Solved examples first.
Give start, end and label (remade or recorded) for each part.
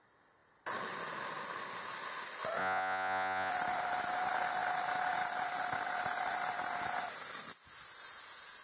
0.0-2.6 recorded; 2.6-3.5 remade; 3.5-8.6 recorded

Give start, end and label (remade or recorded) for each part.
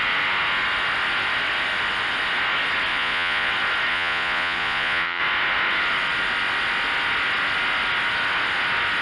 0.0-2.9 recorded; 2.9-3.5 remade; 3.5-3.9 recorded; 3.9-5.2 remade; 5.2-9.0 recorded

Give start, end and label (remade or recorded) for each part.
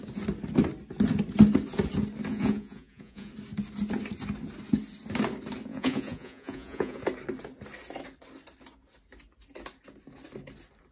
0.0-2.3 recorded; 2.3-3.3 remade; 3.3-5.7 recorded; 5.7-7.0 remade; 7.0-10.9 recorded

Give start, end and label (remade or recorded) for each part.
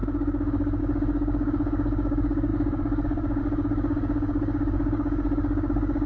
0.0-6.1 remade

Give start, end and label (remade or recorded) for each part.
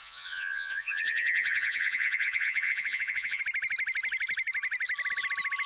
0.0-3.4 remade; 3.4-5.7 recorded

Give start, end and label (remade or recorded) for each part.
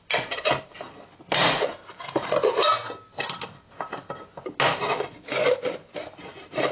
0.0-6.7 recorded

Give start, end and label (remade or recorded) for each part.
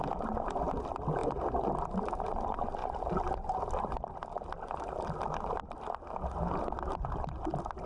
0.0-1.2 recorded; 1.2-2.2 remade; 2.2-2.8 recorded; 2.8-5.5 remade; 5.5-7.9 recorded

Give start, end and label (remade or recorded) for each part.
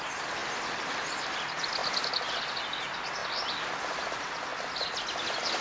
0.0-5.6 recorded